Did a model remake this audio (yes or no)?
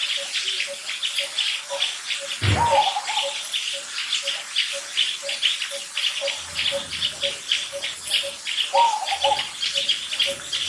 no